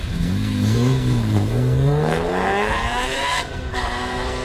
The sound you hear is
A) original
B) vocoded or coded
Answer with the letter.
B